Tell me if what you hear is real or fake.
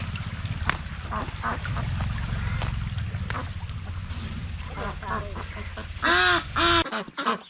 real